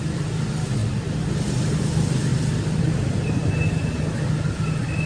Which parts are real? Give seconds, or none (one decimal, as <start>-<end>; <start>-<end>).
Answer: 0.8-1.7; 3.4-4.3